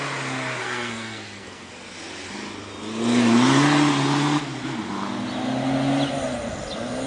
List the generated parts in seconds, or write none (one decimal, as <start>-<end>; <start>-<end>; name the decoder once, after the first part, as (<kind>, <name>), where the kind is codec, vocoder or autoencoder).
0.6-1.7 (codec, SNAC)